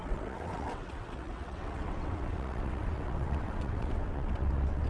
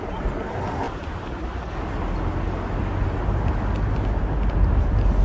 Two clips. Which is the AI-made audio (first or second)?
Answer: first